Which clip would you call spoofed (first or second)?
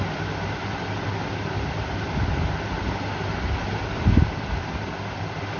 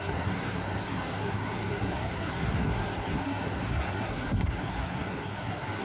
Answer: second